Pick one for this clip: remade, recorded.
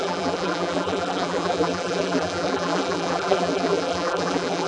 remade